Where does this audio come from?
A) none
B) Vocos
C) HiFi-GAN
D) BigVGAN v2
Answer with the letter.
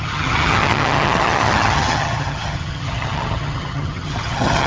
C